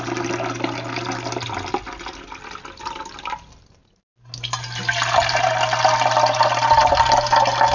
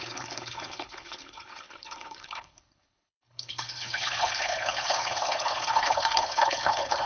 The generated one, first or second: second